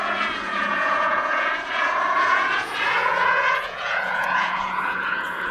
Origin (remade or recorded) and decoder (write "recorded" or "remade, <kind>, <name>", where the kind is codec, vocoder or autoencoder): remade, vocoder, Vocos